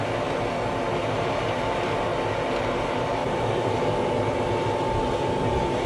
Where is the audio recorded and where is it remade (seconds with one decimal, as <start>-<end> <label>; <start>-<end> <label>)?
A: 0.0-1.0 recorded; 1.0-2.0 remade; 2.0-3.2 recorded; 3.2-3.7 remade; 3.7-5.9 recorded